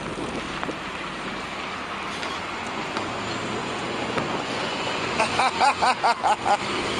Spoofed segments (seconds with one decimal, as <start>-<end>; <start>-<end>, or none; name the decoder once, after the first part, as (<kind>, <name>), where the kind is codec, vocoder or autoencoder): 2.5-3.2 (vocoder, Vocos); 3.6-5.8